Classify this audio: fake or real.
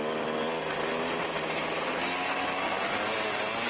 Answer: real